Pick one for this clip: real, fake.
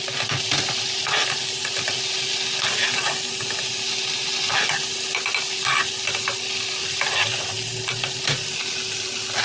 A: real